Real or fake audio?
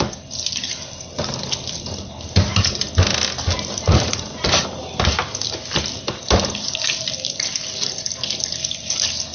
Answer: real